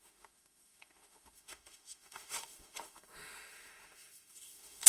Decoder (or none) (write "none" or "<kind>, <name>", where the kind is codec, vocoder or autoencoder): autoencoder, DAC-VAE